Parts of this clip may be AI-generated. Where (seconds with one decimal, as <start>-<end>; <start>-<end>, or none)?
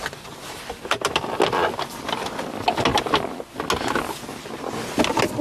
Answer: none